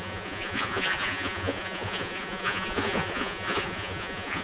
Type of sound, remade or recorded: remade